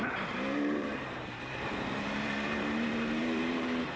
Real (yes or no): no